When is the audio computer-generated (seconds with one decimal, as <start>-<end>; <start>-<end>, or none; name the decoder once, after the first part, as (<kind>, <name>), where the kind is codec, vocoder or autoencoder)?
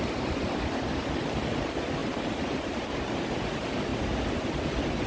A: 2.0-3.2 (vocoder, BigVGAN v2); 3.9-4.5